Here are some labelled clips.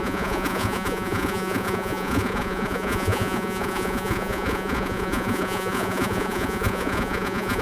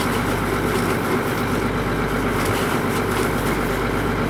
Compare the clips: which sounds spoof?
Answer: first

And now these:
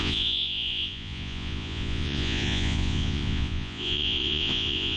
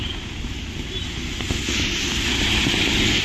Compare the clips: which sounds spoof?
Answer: first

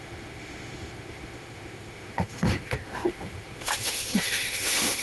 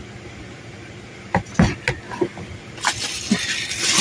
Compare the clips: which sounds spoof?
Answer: first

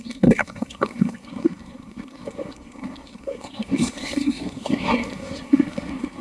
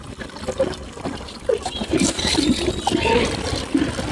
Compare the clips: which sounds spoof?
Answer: first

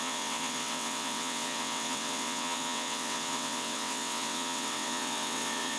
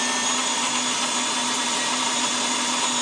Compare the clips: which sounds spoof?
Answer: first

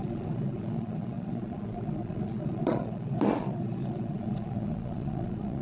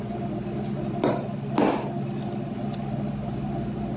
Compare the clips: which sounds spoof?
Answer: first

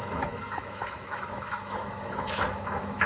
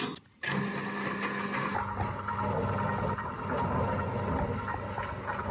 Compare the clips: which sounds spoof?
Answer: first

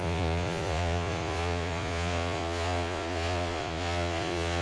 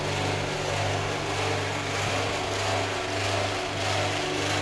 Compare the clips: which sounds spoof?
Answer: first